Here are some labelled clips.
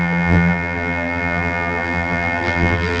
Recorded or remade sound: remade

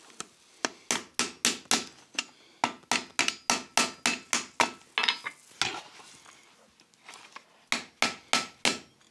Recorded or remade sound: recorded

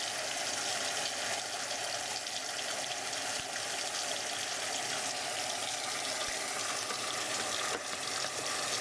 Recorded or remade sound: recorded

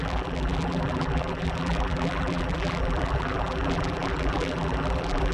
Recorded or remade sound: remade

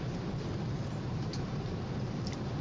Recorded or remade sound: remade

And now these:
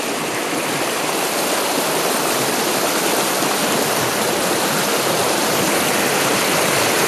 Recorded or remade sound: remade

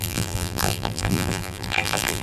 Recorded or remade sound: remade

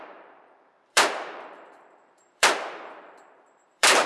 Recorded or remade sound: remade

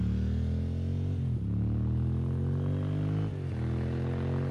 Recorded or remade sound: recorded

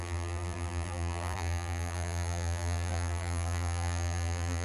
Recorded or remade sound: remade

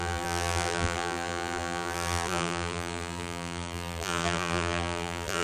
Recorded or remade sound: remade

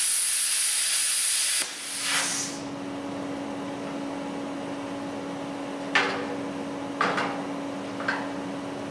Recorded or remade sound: recorded